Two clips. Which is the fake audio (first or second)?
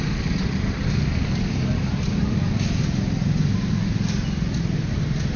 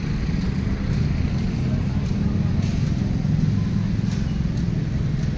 first